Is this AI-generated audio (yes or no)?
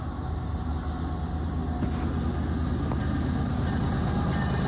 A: no